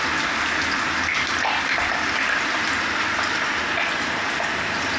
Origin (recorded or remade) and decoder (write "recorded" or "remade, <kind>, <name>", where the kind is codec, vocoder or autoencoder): recorded